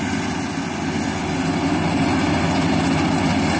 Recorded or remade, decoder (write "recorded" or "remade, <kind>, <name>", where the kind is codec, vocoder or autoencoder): recorded